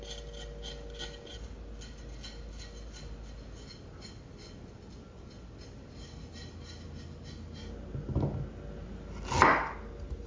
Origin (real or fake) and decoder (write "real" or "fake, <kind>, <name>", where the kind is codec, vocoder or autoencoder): real